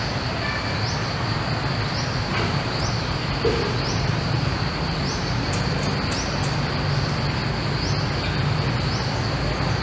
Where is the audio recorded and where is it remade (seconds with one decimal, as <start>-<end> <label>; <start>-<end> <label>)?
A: 0.0-2.3 recorded; 2.3-5.9 remade; 5.9-9.8 recorded